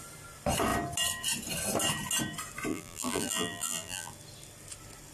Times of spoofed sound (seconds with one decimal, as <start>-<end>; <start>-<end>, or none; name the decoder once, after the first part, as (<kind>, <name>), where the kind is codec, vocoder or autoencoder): 2.7-4.1 (vocoder, BigVGAN v2)